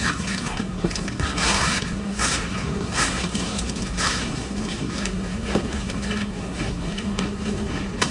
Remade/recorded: remade